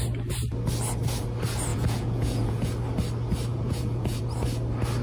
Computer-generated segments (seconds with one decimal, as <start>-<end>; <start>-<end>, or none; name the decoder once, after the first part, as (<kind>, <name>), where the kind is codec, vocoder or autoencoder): 1.7-2.7 (vocoder, Vocos); 3.5-4.2